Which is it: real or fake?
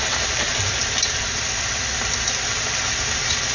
real